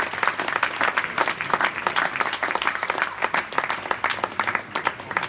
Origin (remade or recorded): recorded